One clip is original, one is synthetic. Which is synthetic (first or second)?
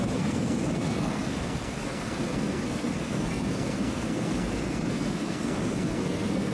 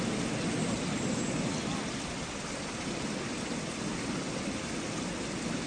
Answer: first